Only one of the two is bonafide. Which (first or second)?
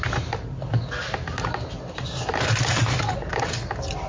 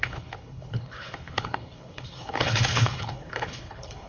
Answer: first